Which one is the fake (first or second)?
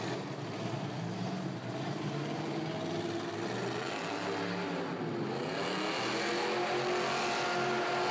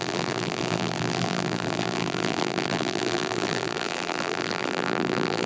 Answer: second